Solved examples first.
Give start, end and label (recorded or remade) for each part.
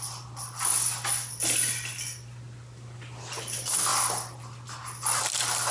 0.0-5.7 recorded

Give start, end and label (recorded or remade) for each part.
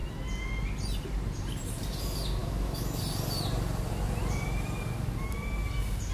0.0-2.4 recorded; 2.4-3.0 remade; 3.0-6.1 recorded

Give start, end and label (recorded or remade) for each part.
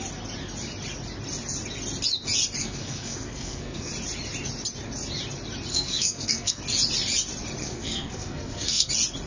0.0-2.6 recorded; 2.6-3.9 remade; 3.9-5.7 recorded; 5.7-6.6 remade; 6.6-7.6 recorded; 7.6-8.9 remade; 8.9-9.3 recorded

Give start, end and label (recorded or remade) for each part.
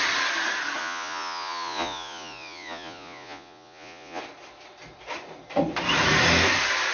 0.0-0.8 recorded; 0.8-4.2 remade; 4.2-6.9 recorded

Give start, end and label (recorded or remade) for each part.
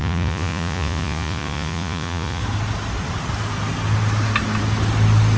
0.0-2.4 remade; 2.4-5.4 recorded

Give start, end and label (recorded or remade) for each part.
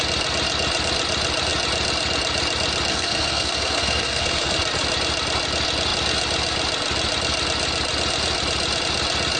0.0-2.9 recorded; 2.9-4.6 remade; 4.6-9.4 recorded